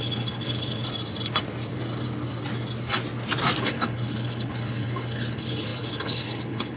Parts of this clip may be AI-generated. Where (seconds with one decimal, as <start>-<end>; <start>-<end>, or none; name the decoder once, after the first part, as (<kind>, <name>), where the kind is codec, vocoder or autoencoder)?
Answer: 0.0-0.8 (codec, HILCodec); 3.6-6.8